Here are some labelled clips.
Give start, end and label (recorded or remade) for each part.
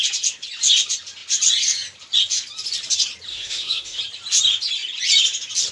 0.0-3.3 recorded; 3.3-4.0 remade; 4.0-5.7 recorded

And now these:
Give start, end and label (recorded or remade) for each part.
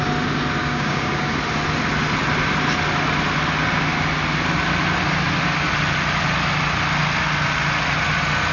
0.0-0.6 recorded; 0.6-1.3 remade; 1.3-8.5 recorded